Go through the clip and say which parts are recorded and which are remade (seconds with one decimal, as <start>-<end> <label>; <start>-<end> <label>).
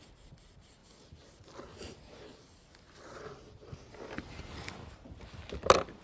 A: 0.0-6.0 recorded